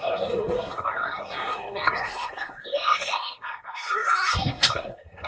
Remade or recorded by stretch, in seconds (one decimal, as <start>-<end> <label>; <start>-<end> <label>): 0.0-5.3 remade